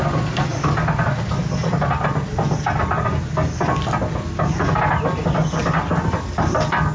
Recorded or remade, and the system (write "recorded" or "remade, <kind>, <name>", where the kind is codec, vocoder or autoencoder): recorded